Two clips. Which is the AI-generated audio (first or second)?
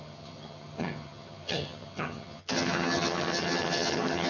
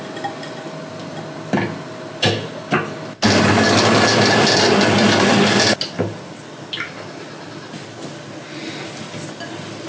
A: first